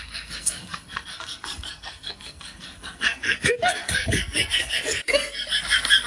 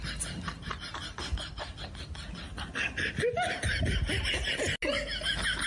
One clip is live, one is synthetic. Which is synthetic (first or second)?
first